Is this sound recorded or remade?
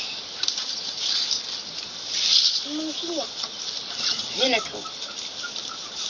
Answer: recorded